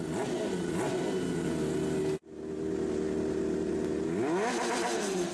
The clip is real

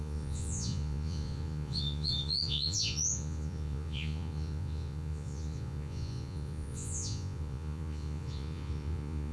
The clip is fake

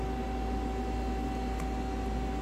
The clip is real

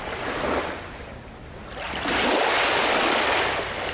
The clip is real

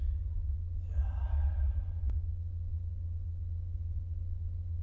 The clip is fake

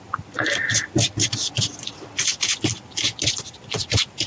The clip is real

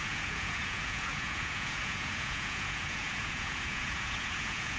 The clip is fake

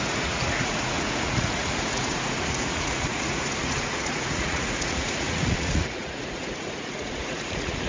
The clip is fake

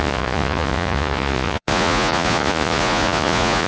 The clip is fake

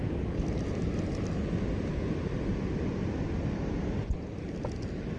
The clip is real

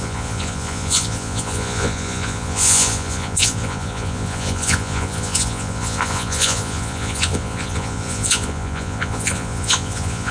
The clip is fake